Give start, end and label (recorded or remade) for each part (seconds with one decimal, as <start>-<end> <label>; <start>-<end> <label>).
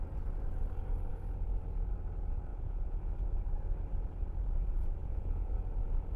0.0-2.5 recorded; 2.5-3.1 remade; 3.1-5.0 recorded; 5.0-5.5 remade; 5.5-6.2 recorded